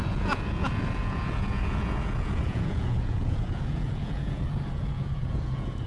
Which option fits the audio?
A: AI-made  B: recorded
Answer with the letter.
A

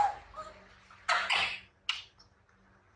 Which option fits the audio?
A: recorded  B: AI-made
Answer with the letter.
A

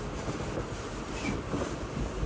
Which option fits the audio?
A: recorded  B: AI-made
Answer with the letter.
B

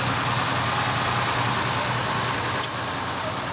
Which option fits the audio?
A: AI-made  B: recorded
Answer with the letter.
B